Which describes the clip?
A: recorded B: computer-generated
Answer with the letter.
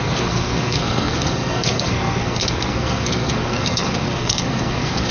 B